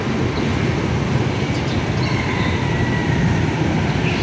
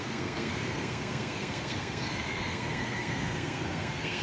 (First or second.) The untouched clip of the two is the first